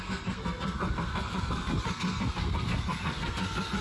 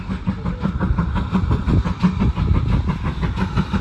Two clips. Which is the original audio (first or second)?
second